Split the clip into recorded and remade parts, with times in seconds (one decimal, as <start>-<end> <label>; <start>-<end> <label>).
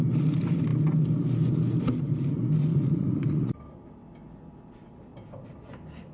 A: 0.0-2.7 recorded; 2.7-3.5 remade; 3.5-6.1 recorded